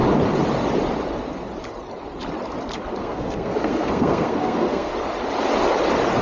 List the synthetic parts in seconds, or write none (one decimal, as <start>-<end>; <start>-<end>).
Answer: 3.0-4.9